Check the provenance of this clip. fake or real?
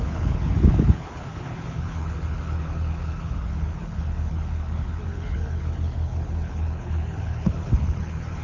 fake